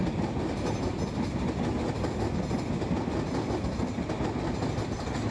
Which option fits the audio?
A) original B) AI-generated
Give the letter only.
A